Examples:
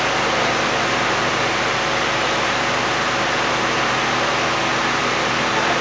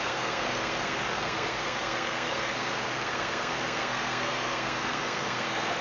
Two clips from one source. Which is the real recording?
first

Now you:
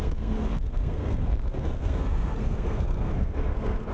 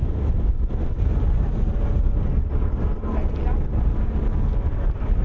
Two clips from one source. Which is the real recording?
second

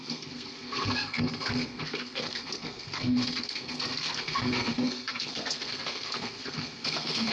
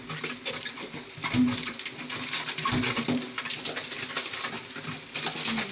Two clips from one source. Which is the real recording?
second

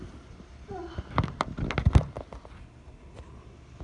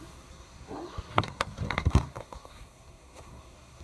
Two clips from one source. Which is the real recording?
first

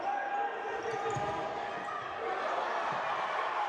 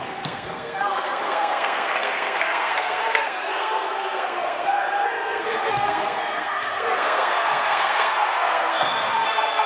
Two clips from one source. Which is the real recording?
first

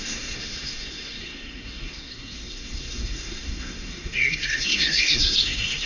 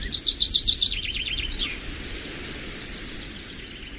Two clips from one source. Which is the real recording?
second